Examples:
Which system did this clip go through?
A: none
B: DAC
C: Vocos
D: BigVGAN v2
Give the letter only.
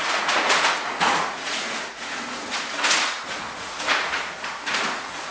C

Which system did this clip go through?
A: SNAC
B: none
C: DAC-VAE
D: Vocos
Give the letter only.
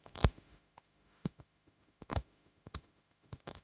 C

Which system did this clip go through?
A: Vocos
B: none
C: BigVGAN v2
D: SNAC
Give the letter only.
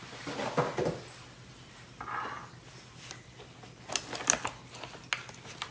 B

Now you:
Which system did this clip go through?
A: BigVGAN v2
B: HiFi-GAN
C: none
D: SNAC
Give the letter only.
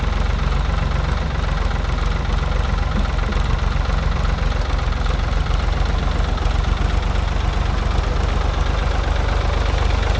C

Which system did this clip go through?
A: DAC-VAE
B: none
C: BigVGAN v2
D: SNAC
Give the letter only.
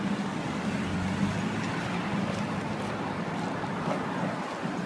B